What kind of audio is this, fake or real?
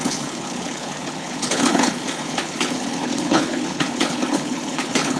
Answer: fake